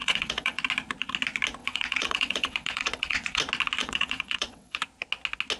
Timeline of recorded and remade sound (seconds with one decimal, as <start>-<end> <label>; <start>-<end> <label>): 0.0-0.6 remade; 0.6-1.6 recorded; 1.6-3.4 remade; 3.4-3.8 recorded; 3.8-4.8 remade; 4.8-5.6 recorded

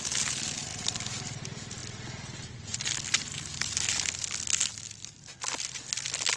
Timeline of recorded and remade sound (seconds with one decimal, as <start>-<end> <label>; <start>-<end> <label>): 0.0-6.4 recorded